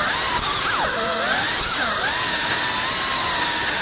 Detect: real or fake real